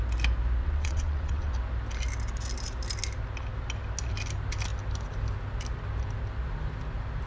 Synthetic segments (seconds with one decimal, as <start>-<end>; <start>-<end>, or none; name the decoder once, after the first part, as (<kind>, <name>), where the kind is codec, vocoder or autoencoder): 0.6-1.5 (vocoder, WaveNeXt)